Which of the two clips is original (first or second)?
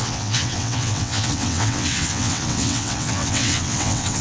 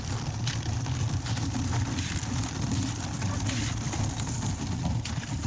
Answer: second